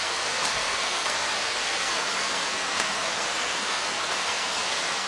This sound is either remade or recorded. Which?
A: remade